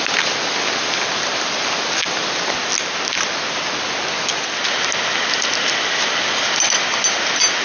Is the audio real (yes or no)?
yes